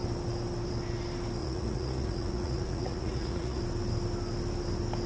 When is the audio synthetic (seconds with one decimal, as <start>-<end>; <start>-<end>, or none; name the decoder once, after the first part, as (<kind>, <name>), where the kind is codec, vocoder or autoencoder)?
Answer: 1.4-3.6 (vocoder, Vocos)